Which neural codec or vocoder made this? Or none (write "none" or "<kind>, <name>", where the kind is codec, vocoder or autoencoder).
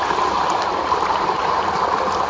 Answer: none